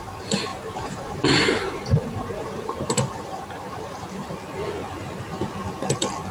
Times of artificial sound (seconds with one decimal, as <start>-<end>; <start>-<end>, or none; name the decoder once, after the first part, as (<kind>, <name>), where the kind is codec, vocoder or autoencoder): 0.5-4.3 (vocoder, BigVGAN v2)